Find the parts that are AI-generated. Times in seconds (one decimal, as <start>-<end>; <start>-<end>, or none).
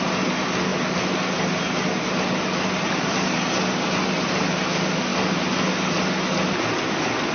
none